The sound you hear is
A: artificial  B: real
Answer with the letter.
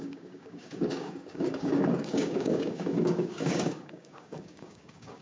A